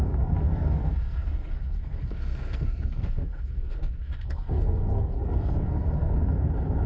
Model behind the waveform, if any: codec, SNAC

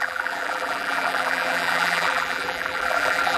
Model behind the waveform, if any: vocoder, BigVGAN v2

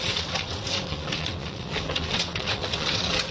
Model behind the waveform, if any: vocoder, WaveNeXt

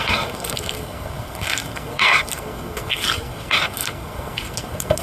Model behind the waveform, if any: codec, SNAC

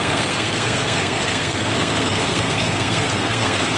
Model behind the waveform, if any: codec, SNAC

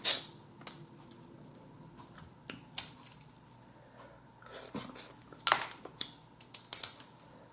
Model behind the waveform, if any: none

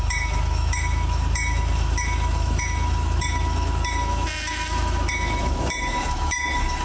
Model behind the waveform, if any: autoencoder, DAC-VAE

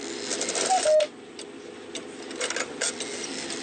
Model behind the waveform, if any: none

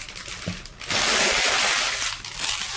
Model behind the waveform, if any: none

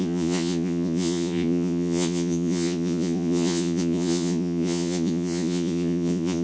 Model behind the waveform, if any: vocoder, Vocos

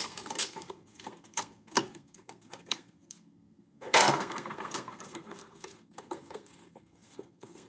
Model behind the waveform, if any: codec, SNAC